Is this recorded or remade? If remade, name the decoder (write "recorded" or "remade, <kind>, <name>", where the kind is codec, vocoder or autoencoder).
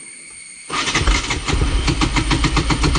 remade, vocoder, BigVGAN v2